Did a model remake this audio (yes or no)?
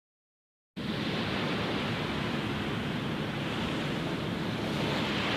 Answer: no